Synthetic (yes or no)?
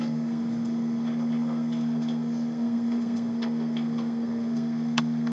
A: yes